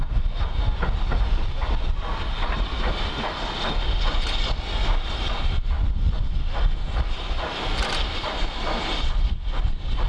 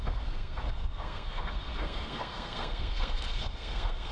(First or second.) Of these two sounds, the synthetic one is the second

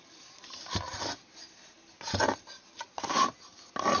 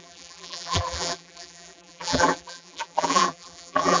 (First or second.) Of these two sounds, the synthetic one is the second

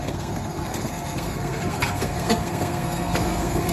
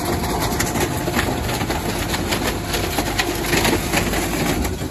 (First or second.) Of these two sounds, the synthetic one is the first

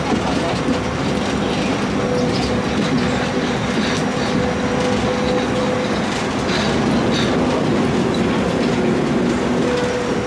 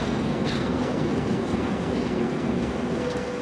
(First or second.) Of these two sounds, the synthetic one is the second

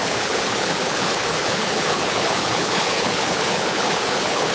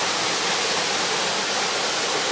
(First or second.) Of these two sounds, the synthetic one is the first